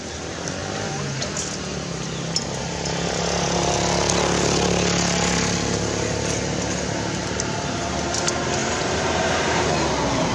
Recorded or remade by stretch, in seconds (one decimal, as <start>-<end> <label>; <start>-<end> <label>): 0.0-7.2 recorded; 7.2-7.8 remade; 7.8-8.6 recorded; 8.6-9.7 remade; 9.7-10.3 recorded